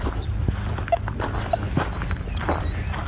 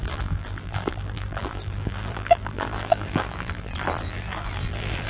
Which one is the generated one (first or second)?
second